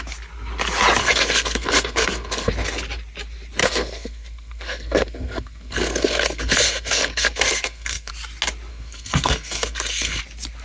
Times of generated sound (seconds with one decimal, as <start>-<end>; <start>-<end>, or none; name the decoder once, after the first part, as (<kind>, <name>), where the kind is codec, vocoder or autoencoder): 1.0-2.5 (codec, SNAC); 3.6-8.1; 8.7-10.2